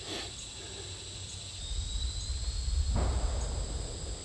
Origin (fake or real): real